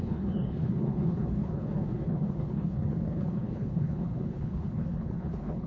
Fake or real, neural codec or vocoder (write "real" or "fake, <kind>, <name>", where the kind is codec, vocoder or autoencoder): fake, codec, HILCodec